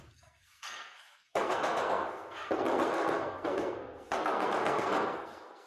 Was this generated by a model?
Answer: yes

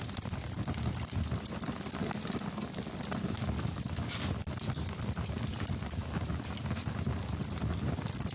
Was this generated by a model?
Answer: no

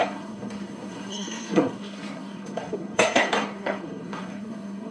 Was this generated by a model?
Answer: yes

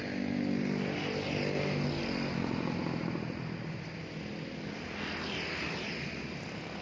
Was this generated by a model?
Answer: no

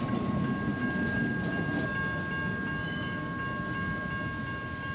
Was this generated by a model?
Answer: no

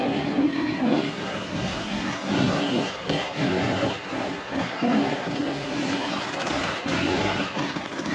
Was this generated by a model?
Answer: yes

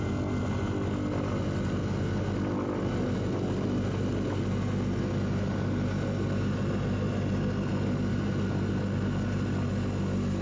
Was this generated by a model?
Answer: no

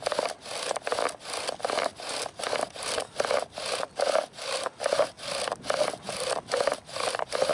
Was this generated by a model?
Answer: no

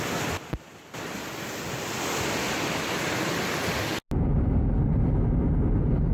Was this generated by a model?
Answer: no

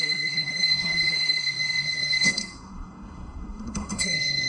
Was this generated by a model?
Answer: yes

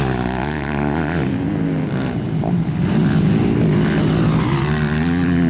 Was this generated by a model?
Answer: no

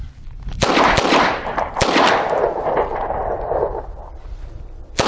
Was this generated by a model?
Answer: no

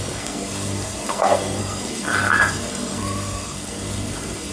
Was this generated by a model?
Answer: yes